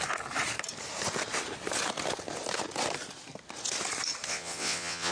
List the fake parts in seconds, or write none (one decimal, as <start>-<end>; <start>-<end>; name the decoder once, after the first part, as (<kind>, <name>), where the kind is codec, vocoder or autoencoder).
4.3-5.1 (vocoder, WaveNeXt)